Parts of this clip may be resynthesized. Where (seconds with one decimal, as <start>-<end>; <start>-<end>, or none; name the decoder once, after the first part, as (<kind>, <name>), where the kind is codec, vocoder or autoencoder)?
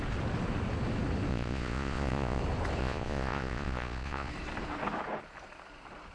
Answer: 1.3-2.4 (vocoder, Vocos); 2.8-4.3